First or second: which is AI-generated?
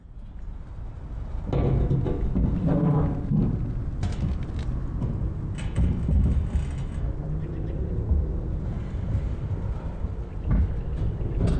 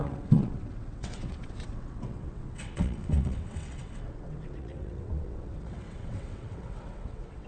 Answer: second